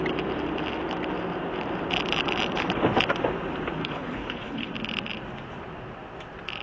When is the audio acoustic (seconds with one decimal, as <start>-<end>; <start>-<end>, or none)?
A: 0.0-3.8; 4.7-6.6